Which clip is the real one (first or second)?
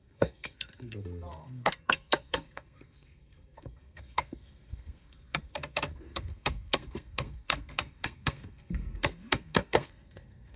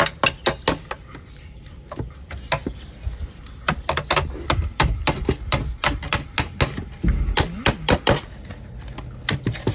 second